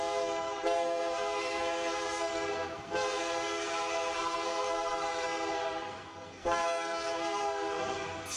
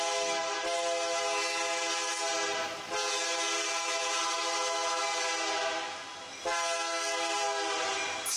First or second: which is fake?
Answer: first